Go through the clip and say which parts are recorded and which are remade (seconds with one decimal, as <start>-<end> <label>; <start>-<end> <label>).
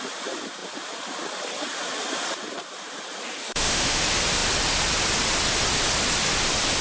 0.0-3.4 recorded; 3.4-4.0 remade; 4.0-6.8 recorded